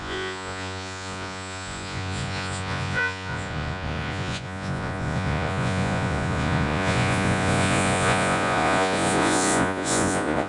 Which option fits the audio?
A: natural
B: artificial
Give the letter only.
B